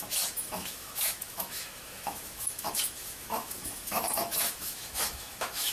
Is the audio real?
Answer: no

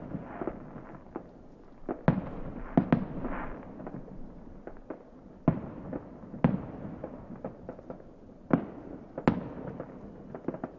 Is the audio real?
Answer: yes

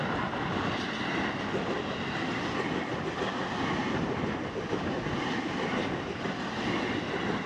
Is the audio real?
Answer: yes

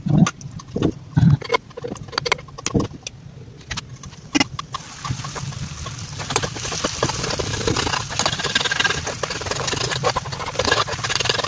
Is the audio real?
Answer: yes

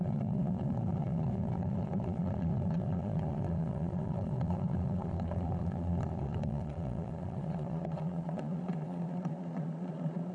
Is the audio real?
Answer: no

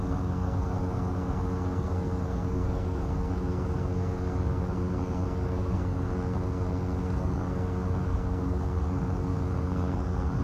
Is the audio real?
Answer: no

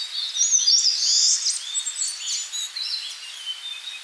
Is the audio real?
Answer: yes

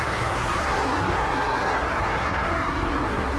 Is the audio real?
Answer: no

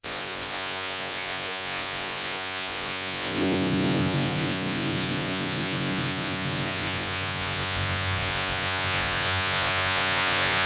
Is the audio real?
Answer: no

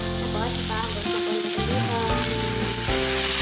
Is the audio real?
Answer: yes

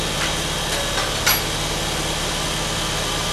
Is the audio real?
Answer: yes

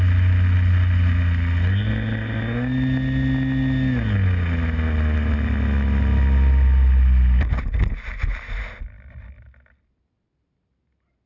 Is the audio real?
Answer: yes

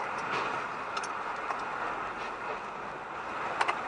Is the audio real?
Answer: yes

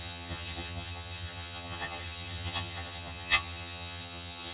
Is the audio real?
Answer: no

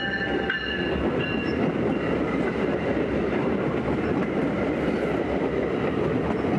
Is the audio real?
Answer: yes